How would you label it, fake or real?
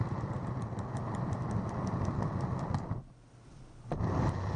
real